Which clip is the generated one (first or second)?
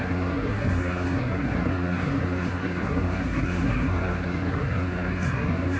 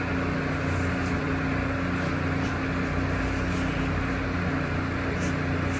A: first